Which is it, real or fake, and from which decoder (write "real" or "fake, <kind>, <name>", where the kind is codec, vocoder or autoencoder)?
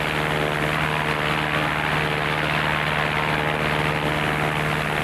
real